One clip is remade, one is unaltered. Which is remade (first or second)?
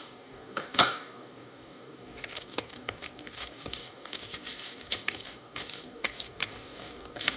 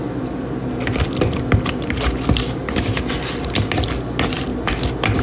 first